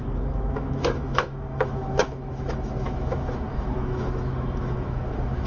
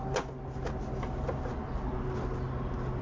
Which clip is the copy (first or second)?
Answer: first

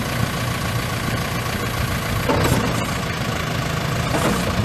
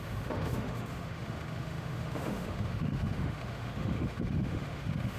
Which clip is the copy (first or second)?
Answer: second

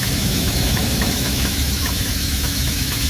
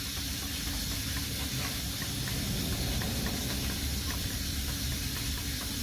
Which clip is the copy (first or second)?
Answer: first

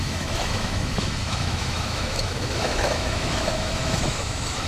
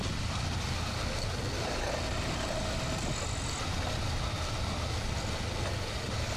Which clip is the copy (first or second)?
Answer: first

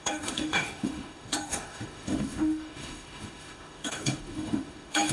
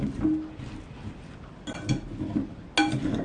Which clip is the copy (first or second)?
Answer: first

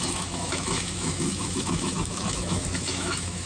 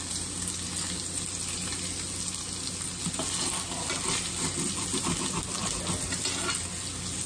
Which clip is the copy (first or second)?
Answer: first